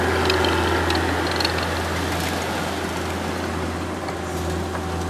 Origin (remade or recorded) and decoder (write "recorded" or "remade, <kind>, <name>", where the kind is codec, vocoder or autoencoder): recorded